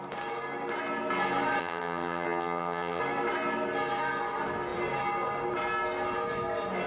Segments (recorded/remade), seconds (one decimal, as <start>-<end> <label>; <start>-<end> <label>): 0.0-1.6 recorded; 1.6-3.0 remade; 3.0-6.9 recorded